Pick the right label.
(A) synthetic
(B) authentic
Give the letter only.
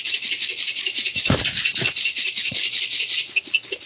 B